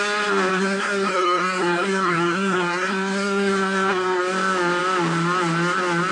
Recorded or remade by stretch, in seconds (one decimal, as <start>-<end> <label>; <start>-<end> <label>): 0.0-0.5 recorded; 0.5-4.2 remade; 4.2-6.1 recorded